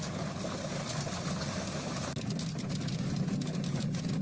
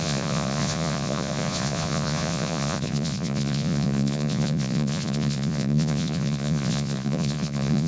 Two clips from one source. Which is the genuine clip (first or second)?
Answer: first